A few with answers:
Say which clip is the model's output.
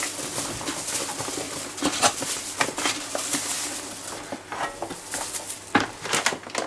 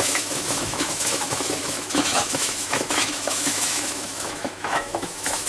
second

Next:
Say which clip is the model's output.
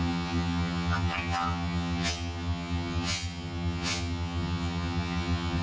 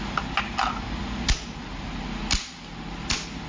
first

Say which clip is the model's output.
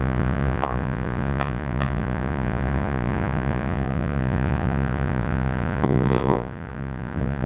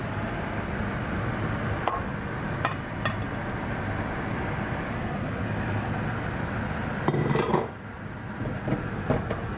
first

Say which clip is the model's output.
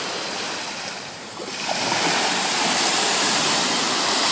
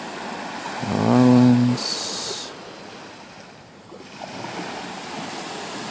first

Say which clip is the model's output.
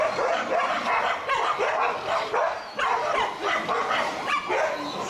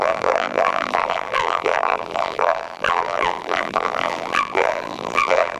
second